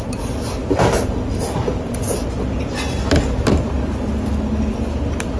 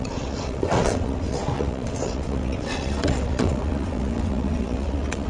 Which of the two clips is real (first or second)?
first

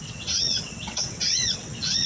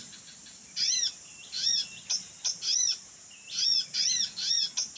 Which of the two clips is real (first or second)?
second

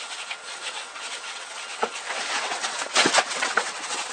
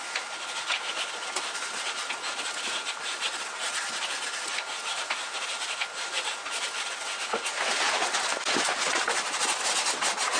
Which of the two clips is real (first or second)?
second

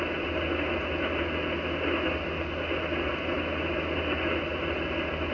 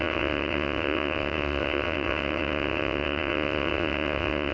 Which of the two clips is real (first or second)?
first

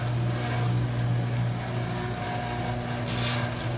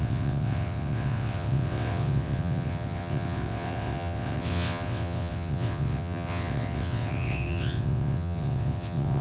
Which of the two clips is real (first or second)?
first